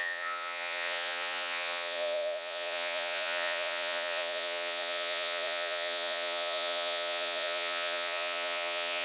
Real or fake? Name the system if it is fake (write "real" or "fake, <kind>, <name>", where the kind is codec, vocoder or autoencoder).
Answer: fake, vocoder, Vocos